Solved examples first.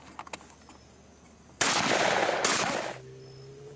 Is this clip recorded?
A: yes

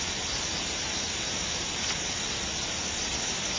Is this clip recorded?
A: yes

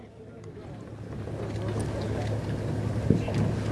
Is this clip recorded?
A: yes